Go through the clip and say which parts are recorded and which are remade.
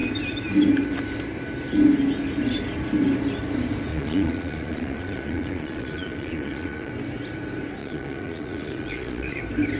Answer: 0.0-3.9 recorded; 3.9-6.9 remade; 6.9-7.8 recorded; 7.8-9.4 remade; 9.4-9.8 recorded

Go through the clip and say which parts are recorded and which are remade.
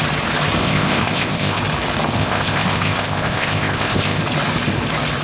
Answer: 0.0-0.6 recorded; 0.6-1.6 remade; 1.6-2.2 recorded; 2.2-4.2 remade; 4.2-5.2 recorded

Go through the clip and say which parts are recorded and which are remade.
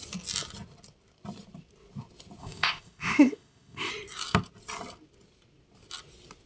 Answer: 0.0-2.4 recorded; 2.4-3.9 remade; 3.9-6.5 recorded